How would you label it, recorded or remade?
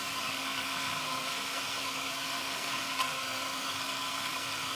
remade